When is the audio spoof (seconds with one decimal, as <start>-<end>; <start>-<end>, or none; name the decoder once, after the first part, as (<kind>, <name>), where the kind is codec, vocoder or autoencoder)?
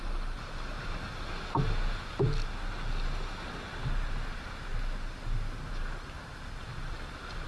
none